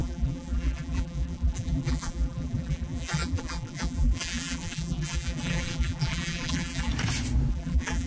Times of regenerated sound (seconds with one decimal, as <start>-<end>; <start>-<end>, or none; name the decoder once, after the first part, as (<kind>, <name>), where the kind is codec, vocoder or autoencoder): 0.0-6.9 (vocoder, BigVGAN v2); 7.5-8.1